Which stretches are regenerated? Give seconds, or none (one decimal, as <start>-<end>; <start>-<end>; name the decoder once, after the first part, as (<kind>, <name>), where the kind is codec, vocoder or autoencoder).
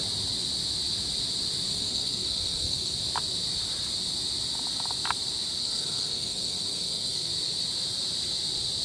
1.7-3.0 (codec, SNAC); 5.6-7.3